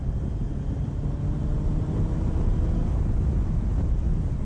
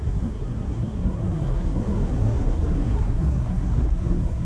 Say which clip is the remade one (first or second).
second